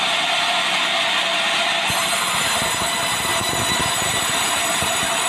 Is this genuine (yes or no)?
yes